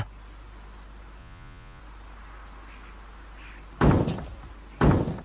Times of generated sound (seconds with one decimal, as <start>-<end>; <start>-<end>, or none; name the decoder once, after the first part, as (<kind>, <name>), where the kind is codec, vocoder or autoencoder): 1.2-1.8 (vocoder, Vocos)